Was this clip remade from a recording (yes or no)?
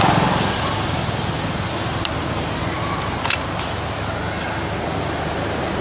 no